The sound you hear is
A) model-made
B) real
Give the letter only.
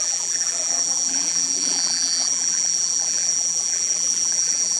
A